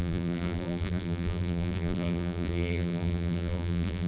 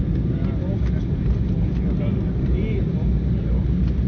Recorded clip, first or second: second